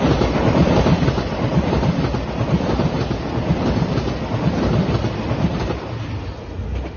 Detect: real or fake real